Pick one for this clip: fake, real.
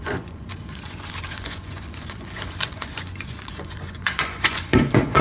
fake